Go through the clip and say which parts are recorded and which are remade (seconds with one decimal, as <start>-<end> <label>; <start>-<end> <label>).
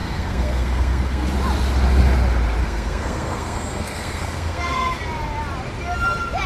0.0-1.3 remade; 1.3-2.6 recorded; 2.6-5.0 remade; 5.0-6.5 recorded